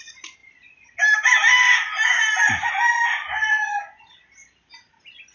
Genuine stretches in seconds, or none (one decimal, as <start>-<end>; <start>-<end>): 0.0-3.2; 4.0-5.3